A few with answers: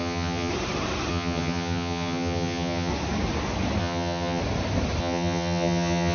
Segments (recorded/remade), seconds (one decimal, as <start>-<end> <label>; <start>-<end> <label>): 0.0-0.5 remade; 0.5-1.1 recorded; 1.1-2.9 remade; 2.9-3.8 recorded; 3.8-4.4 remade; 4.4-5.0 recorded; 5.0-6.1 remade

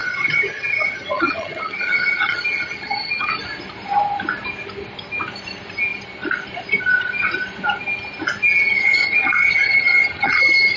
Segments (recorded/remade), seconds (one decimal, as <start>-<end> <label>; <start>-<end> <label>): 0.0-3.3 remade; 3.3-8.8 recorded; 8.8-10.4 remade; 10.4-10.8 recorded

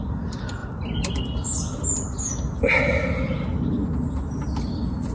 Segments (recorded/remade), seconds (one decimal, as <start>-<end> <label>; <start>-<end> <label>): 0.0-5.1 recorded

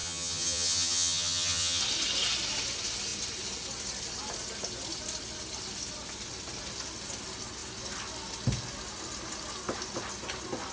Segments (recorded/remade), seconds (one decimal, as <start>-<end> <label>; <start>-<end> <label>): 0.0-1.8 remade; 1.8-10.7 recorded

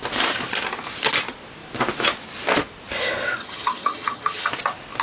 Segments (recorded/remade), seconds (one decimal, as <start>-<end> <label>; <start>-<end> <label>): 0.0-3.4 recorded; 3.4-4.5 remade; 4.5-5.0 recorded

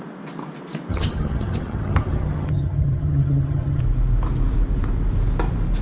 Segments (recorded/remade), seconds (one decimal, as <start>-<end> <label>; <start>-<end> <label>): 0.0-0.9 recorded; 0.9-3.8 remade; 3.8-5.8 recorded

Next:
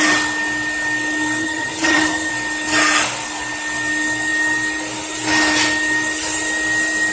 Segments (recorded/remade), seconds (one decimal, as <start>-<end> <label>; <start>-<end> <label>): 0.0-1.4 recorded; 1.4-2.3 remade; 2.3-7.1 recorded